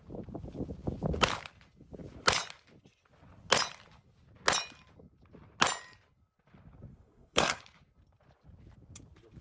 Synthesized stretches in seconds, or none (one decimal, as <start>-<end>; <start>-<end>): 6.9-7.6